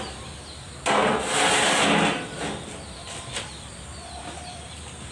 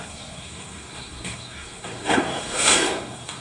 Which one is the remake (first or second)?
second